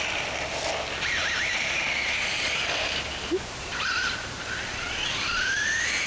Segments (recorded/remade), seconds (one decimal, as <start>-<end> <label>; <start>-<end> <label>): 0.0-1.2 recorded; 1.2-1.8 remade; 1.8-3.7 recorded; 3.7-6.1 remade